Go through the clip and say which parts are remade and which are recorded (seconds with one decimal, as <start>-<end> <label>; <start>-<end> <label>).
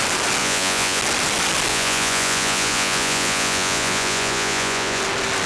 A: 0.0-0.4 recorded; 0.4-1.0 remade; 1.0-1.7 recorded; 1.7-5.0 remade; 5.0-5.5 recorded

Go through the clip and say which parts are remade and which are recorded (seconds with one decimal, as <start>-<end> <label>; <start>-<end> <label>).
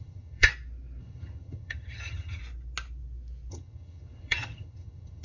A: 0.0-0.5 remade; 0.5-1.0 recorded; 1.0-2.4 remade; 2.4-3.5 recorded; 3.5-5.2 remade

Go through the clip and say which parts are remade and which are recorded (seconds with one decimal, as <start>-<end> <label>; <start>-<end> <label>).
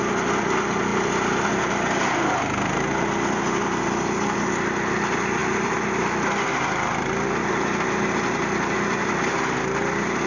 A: 0.0-10.3 recorded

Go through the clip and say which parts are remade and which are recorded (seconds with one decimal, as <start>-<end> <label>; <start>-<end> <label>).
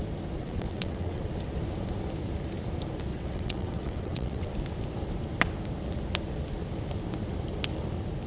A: 0.0-0.4 recorded; 0.4-1.2 remade; 1.2-3.1 recorded; 3.1-4.5 remade; 4.5-8.3 recorded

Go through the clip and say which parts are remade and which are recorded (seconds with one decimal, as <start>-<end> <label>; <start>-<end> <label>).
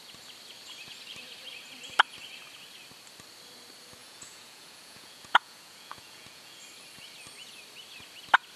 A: 0.0-4.0 recorded; 4.0-6.6 remade; 6.6-8.6 recorded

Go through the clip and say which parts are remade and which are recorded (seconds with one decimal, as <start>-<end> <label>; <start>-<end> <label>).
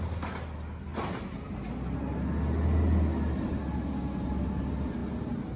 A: 0.0-5.6 recorded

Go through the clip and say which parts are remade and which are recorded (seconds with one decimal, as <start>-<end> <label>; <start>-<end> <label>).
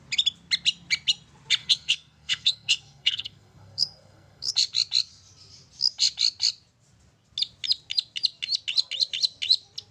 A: 0.0-1.6 recorded; 1.6-4.5 remade; 4.5-9.9 recorded